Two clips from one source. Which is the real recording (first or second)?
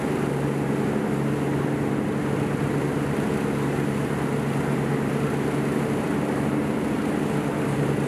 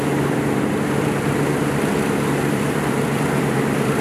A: first